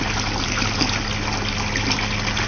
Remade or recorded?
recorded